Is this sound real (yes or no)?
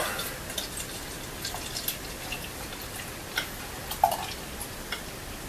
yes